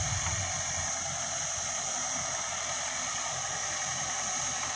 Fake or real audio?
real